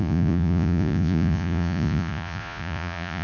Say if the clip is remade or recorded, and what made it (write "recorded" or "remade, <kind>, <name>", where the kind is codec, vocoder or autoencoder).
remade, vocoder, Vocos